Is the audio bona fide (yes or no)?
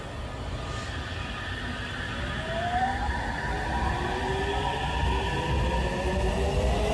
yes